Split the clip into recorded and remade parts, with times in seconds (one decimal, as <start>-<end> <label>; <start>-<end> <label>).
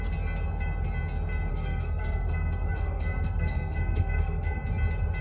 0.0-1.5 recorded; 1.5-4.6 remade; 4.6-5.2 recorded